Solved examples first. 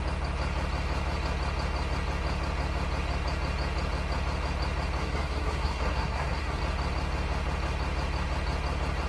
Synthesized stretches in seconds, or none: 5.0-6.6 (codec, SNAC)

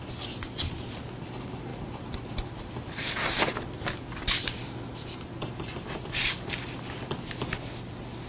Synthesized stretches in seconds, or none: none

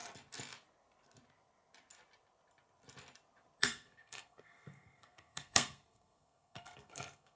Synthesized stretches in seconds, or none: 3.6-7.4 (codec, SNAC)